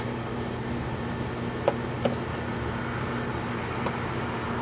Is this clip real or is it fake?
real